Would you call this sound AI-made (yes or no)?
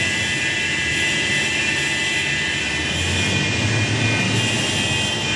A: no